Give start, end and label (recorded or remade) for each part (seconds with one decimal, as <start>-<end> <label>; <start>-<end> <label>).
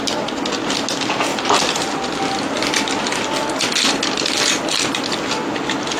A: 0.0-1.3 recorded; 1.3-4.9 remade; 4.9-6.0 recorded